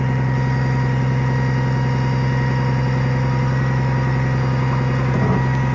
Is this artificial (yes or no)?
no